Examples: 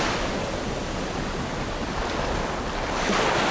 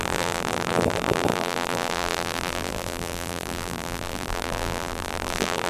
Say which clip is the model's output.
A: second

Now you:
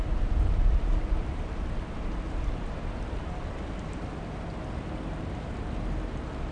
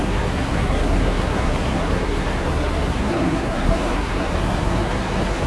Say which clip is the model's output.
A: second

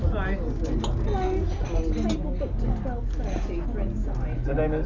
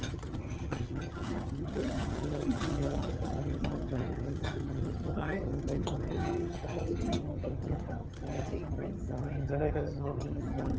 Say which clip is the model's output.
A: second